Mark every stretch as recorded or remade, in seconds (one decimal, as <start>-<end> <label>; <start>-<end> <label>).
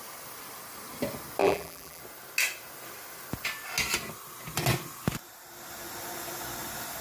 0.0-1.4 recorded; 1.4-2.0 remade; 2.0-7.0 recorded